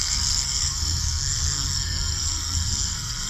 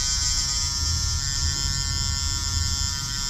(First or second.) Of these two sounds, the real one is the second